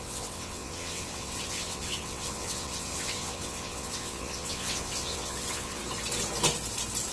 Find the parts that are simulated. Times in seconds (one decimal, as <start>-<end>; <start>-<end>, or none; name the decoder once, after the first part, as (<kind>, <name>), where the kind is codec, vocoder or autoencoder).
0.0-5.8 (vocoder, WaveNeXt)

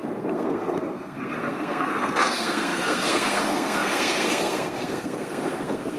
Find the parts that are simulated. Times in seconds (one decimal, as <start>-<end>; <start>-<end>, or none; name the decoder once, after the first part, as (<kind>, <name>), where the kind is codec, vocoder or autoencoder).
0.0-6.0 (codec, SNAC)